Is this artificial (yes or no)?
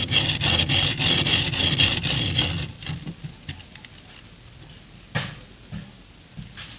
no